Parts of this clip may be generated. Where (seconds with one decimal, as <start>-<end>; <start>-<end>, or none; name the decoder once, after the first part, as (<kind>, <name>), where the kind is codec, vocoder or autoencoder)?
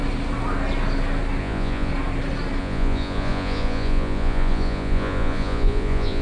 1.4-1.9 (vocoder, Vocos); 2.6-6.2